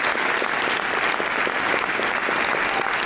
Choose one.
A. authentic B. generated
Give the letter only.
A